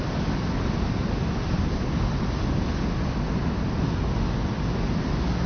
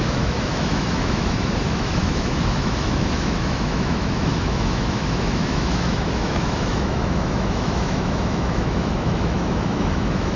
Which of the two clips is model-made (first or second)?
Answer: second